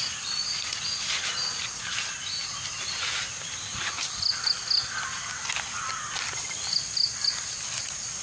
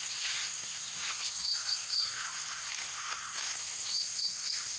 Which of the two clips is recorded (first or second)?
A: first